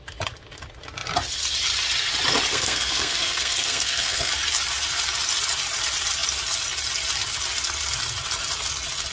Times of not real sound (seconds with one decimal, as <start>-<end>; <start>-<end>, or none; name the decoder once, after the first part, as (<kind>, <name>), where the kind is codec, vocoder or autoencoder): 2.5-4.3 (codec, SNAC)